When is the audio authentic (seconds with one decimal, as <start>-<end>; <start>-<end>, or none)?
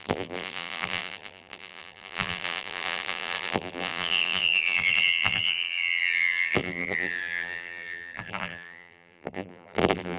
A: none